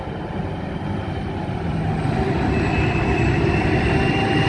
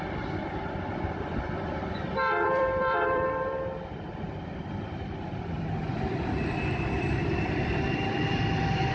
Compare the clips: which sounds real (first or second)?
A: first